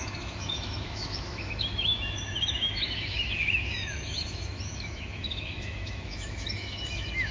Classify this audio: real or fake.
fake